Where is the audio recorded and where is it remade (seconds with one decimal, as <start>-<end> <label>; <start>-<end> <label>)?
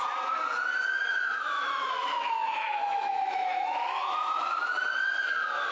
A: 0.0-1.1 recorded; 1.1-4.5 remade; 4.5-5.7 recorded